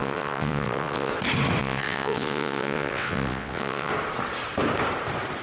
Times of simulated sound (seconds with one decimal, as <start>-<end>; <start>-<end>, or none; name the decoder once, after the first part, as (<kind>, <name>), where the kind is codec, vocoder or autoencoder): 0.0-1.1 (vocoder, WaveNeXt); 1.6-3.9